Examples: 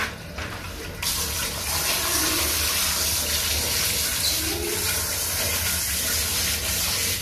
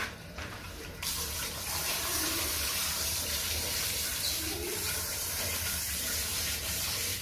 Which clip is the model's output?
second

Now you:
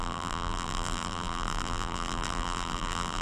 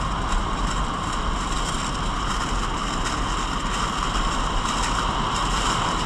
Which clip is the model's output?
first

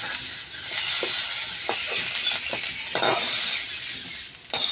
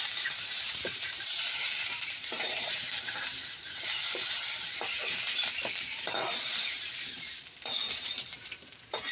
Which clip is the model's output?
second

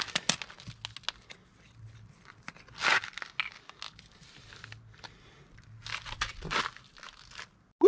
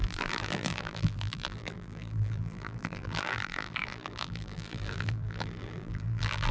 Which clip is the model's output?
second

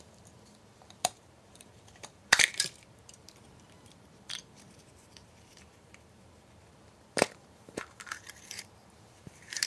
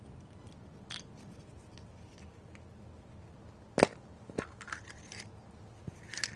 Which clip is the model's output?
first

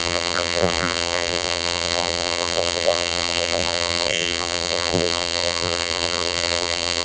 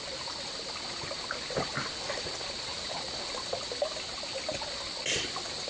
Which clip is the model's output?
first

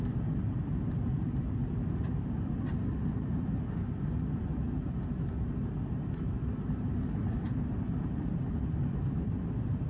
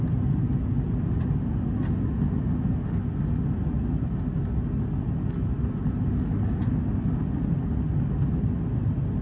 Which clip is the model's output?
first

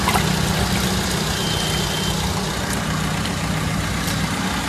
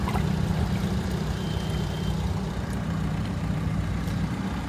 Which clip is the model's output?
second